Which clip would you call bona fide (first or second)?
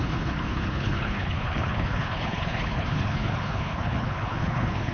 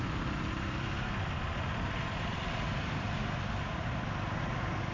second